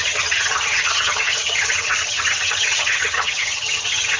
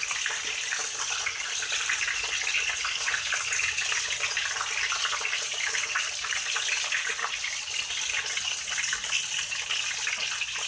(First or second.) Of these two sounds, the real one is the second